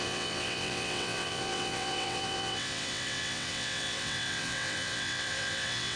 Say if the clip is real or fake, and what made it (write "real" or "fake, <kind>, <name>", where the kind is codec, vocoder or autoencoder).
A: fake, vocoder, WaveNeXt